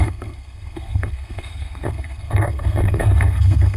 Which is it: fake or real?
fake